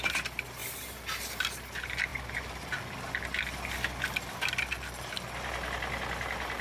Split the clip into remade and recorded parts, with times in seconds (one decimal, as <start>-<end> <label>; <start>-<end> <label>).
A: 0.0-6.6 recorded